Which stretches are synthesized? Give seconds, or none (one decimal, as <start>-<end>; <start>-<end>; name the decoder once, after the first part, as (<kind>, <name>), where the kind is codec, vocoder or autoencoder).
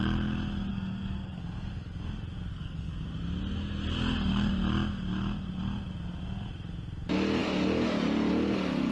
0.7-1.4 (codec, SNAC); 2.5-3.0